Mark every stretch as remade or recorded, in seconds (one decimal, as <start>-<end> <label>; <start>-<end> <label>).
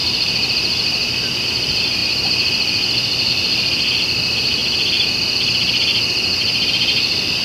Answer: 0.0-7.4 recorded